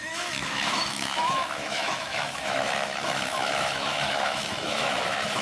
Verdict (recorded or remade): remade